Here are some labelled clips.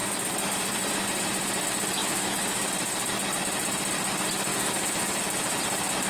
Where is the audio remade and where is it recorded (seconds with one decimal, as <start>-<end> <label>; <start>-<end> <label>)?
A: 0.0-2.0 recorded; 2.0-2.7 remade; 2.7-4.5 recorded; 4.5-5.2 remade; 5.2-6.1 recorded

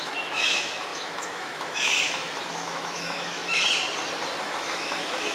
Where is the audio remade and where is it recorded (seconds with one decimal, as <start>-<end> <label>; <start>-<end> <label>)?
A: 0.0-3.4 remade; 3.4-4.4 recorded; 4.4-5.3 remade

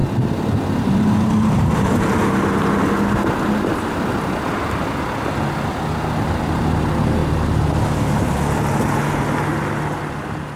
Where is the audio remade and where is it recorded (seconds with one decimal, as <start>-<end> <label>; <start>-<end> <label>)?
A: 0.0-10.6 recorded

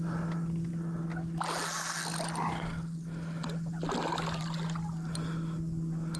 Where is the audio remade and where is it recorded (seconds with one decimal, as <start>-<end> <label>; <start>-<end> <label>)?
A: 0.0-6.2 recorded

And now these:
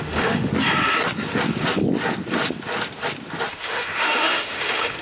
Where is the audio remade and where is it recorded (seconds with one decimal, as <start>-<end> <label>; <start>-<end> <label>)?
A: 0.0-0.5 remade; 0.5-3.5 recorded; 3.5-5.0 remade

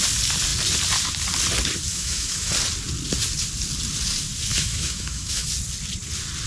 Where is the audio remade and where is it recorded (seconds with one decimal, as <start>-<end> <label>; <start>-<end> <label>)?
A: 0.0-1.9 recorded; 1.9-2.5 remade; 2.5-4.5 recorded; 4.5-5.5 remade; 5.5-6.5 recorded